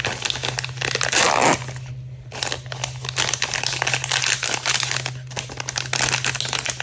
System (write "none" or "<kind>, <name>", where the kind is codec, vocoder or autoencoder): none